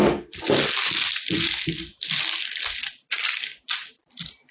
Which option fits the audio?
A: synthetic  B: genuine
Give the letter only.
B